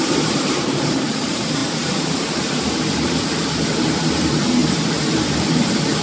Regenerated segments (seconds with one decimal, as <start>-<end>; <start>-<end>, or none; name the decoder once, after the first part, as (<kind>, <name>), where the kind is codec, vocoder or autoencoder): 0.0-6.0 (vocoder, BigVGAN v2)